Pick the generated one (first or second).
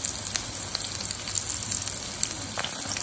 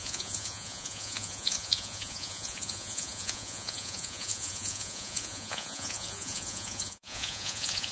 second